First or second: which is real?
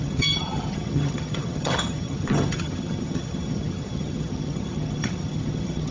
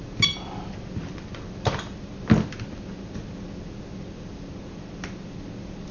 second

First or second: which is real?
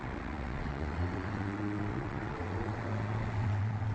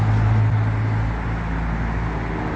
second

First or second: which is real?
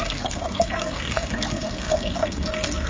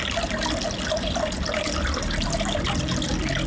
second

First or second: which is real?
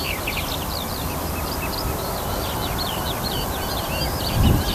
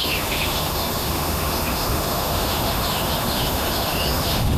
first